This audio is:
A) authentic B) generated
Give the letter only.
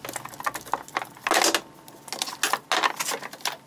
A